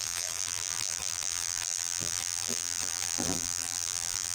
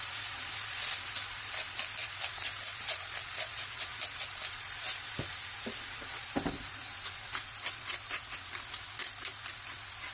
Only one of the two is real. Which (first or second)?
second